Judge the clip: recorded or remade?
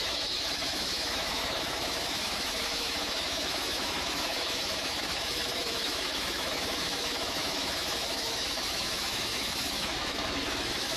remade